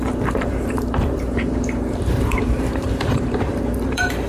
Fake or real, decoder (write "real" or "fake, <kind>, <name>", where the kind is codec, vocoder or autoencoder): fake, vocoder, BigVGAN v2